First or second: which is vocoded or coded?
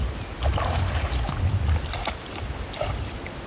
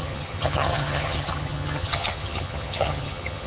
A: second